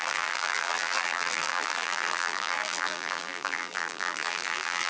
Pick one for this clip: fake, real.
fake